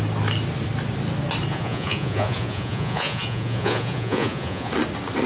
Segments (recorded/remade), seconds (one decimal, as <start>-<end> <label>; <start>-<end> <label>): 0.0-1.5 recorded; 1.5-4.7 remade; 4.7-5.3 recorded